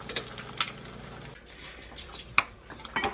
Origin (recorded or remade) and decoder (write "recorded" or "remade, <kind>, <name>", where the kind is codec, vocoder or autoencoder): recorded